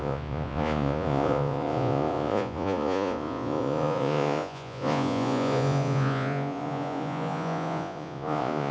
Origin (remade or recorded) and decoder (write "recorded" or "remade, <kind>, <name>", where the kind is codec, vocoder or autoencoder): remade, vocoder, Vocos